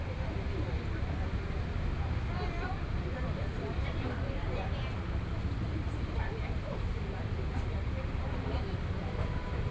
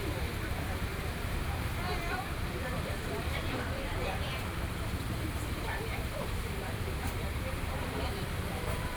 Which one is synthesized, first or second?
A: second